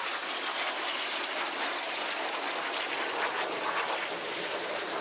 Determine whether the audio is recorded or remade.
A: recorded